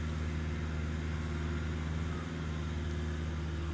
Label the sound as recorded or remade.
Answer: recorded